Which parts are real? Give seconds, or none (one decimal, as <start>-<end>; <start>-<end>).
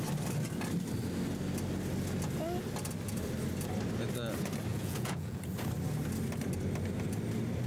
0.0-4.7; 5.4-7.7